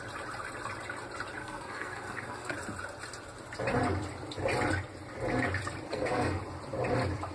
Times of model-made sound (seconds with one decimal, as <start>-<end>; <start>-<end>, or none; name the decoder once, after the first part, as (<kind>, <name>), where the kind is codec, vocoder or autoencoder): 1.4-2.5 (codec, SNAC); 5.9-6.4